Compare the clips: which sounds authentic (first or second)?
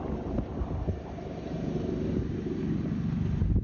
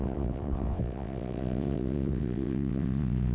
first